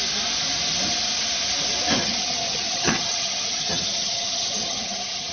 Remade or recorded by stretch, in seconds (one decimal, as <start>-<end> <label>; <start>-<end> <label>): 0.0-2.0 recorded; 2.0-5.3 remade